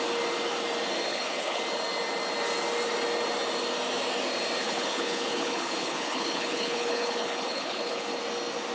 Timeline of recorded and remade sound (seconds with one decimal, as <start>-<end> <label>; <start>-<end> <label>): 0.0-1.1 recorded; 1.1-1.6 remade; 1.6-4.6 recorded; 4.6-8.2 remade; 8.2-8.7 recorded